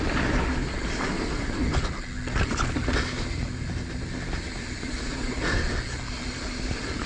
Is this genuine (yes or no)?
yes